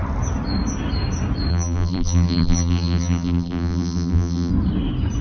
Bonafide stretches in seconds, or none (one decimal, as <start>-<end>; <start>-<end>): 0.0-1.5; 4.5-5.2

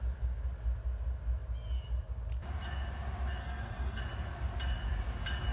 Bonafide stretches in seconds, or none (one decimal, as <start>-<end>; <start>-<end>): 0.0-3.4; 4.0-5.5

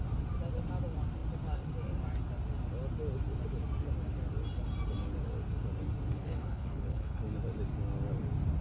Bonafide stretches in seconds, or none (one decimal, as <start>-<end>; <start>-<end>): 0.0-6.1; 7.2-8.6